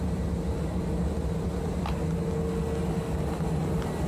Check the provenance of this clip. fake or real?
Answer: real